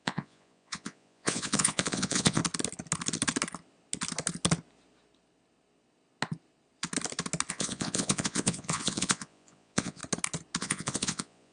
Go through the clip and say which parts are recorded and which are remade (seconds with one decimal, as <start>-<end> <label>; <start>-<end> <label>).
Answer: 0.0-2.4 remade; 2.4-7.5 recorded; 7.5-10.0 remade; 10.0-10.6 recorded; 10.6-11.5 remade